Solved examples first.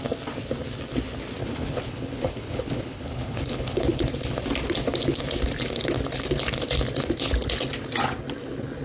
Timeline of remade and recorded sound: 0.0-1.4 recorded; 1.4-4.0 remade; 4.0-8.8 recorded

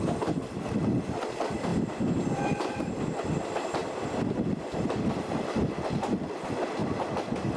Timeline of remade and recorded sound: 0.0-1.7 recorded; 1.7-2.9 remade; 2.9-3.8 recorded; 3.8-5.5 remade; 5.5-6.8 recorded; 6.8-7.6 remade

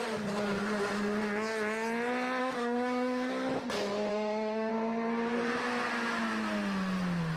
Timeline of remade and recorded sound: 0.0-2.4 recorded; 2.4-3.3 remade; 3.3-4.1 recorded; 4.1-4.7 remade; 4.7-7.4 recorded

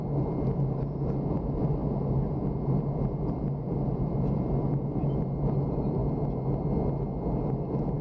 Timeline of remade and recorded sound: 0.0-8.0 recorded